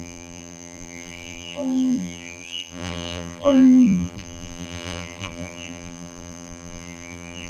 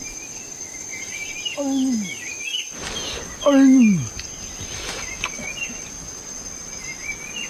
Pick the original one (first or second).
second